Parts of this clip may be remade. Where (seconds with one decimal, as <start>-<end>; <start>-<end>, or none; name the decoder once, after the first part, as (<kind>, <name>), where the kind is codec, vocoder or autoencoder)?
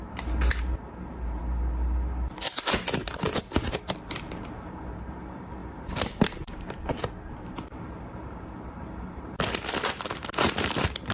0.0-1.4 (vocoder, BigVGAN v2); 2.4-11.1